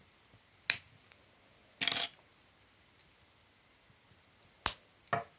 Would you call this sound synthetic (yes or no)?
no